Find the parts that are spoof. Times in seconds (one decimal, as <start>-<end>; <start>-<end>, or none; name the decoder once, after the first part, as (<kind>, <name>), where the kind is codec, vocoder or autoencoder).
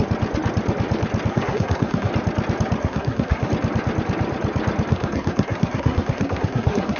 1.3-2.1 (codec, SNAC); 2.8-3.5; 4.9-7.0